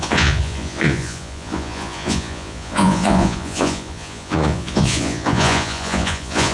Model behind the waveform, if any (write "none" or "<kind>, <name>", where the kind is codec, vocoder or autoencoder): vocoder, Vocos